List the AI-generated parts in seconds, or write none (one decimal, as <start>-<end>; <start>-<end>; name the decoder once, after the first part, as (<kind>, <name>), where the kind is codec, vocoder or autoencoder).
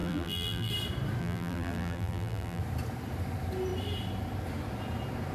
0.0-0.7 (vocoder, BigVGAN v2); 1.2-2.6